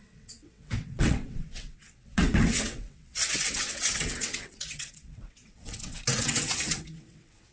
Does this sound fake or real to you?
fake